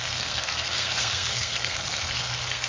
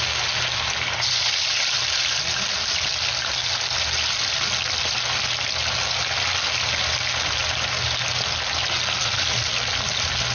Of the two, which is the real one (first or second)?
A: second